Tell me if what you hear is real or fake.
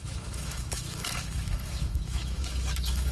fake